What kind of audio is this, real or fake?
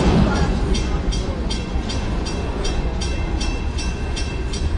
fake